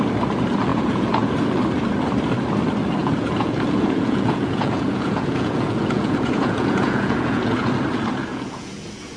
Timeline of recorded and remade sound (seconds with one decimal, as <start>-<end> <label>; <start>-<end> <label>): 0.0-0.7 recorded; 0.7-1.3 remade; 1.3-3.0 recorded; 3.0-7.7 remade; 7.7-8.3 recorded; 8.3-9.2 remade